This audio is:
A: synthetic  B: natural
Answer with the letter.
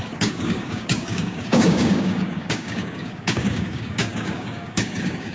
A